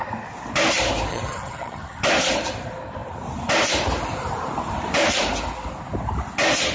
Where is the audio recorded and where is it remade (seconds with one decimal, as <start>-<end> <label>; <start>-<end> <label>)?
0.0-1.1 recorded; 1.1-2.0 remade; 2.0-6.7 recorded